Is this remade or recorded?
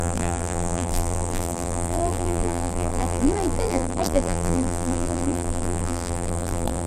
remade